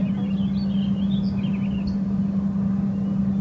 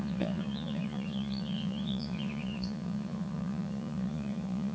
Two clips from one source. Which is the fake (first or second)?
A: second